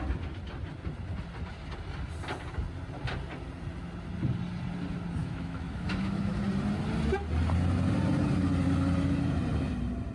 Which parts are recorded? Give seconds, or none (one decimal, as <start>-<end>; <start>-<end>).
0.0-5.2; 6.4-10.1